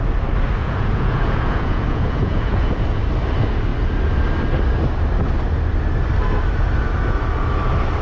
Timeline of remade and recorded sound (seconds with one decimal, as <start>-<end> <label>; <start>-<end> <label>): 0.0-0.6 recorded; 0.6-3.0 remade; 3.0-8.0 recorded